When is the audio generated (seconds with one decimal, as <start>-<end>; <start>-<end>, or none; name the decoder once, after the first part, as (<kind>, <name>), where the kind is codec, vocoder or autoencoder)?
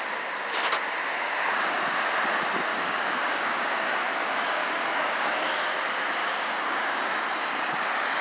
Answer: 2.7-5.5 (codec, DAC); 6.2-6.8